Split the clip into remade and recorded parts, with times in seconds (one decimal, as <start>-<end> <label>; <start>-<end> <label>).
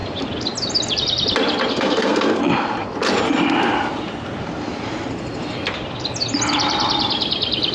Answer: 0.0-1.7 recorded; 1.7-2.4 remade; 2.4-7.7 recorded